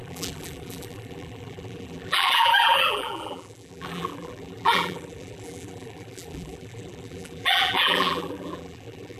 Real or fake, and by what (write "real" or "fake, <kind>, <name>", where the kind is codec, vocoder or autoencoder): fake, vocoder, BigVGAN v2